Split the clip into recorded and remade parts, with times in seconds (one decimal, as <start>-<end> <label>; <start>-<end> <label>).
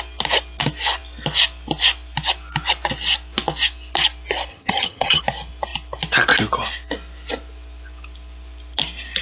0.0-4.5 recorded; 4.5-5.2 remade; 5.2-9.2 recorded